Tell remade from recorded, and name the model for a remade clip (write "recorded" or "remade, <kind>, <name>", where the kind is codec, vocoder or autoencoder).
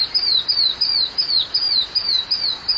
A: recorded